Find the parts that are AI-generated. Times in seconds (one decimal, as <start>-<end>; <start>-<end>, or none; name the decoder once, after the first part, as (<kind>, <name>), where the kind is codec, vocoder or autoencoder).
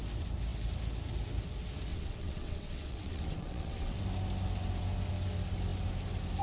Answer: 1.9-4.0 (vocoder, WaveNeXt)